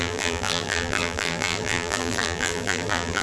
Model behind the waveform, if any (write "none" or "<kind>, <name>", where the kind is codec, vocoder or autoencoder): vocoder, BigVGAN v2